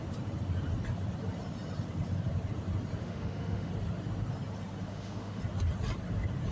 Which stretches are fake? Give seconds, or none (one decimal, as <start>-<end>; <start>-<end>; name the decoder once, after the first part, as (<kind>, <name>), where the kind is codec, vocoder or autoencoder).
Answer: 3.0-3.7 (autoencoder, DAC-VAE); 4.9-5.4